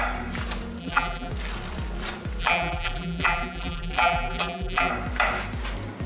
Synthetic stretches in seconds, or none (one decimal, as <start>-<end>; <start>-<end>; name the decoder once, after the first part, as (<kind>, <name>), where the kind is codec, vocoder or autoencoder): 0.8-1.3 (vocoder, BigVGAN v2); 2.4-4.9